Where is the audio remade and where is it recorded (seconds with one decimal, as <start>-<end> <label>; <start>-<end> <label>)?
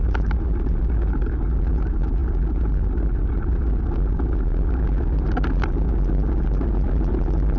0.0-7.6 recorded